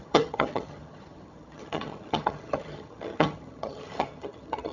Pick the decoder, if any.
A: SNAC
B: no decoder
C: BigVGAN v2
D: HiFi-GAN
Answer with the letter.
D